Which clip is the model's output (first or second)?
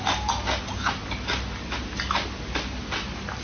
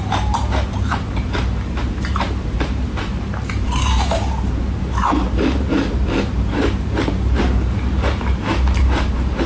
second